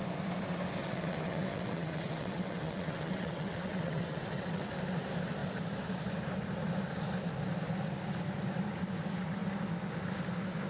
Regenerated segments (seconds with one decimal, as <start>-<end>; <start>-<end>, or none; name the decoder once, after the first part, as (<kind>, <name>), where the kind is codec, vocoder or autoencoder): 0.8-4.7 (vocoder, WaveNeXt)